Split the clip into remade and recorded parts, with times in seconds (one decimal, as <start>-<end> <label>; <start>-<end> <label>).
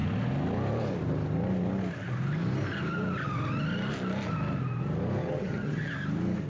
0.0-5.2 recorded; 5.2-5.9 remade; 5.9-6.5 recorded